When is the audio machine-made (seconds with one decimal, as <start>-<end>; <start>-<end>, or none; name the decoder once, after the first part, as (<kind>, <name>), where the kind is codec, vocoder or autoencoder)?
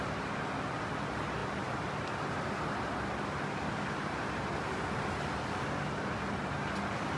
none